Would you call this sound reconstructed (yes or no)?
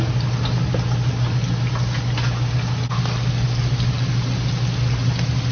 no